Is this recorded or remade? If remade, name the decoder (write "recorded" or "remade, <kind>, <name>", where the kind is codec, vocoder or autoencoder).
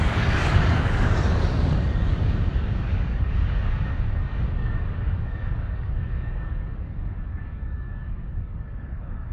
remade, codec, DAC